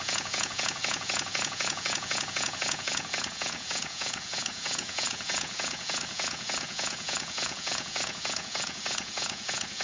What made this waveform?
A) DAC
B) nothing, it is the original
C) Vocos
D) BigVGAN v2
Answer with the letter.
C